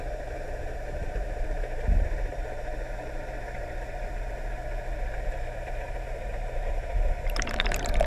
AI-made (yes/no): yes